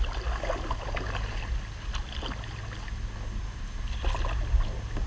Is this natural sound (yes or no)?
yes